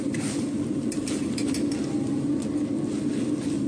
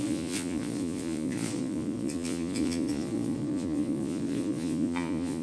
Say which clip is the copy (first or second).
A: second